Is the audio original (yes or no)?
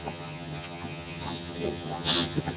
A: no